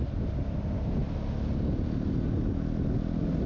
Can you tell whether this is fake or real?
real